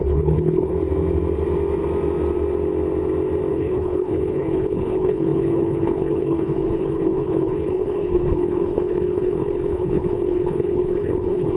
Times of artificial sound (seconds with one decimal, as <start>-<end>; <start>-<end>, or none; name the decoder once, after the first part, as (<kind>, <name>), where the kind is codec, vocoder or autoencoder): 0.0-0.7 (codec, HILCodec); 3.5-11.6